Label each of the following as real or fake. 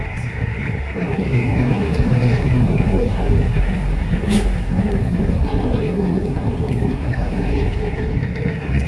fake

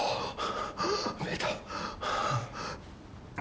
real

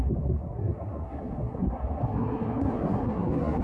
fake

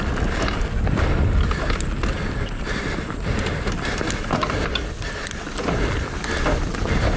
real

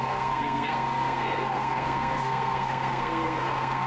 fake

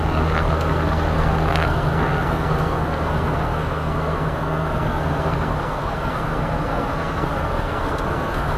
fake